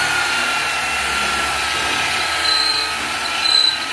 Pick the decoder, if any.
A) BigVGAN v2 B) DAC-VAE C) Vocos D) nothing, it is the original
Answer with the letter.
D